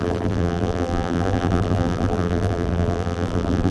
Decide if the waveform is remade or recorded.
remade